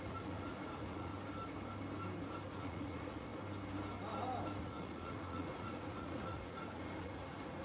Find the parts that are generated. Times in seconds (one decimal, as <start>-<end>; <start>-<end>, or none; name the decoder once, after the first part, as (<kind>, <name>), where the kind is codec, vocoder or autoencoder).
0.0-1.1 (vocoder, Vocos); 2.5-3.3; 4.6-7.6